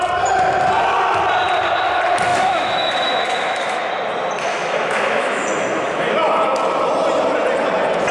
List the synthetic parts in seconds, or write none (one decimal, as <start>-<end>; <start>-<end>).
2.3-3.9; 4.5-6.0